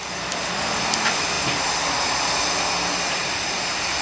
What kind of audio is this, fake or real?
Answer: real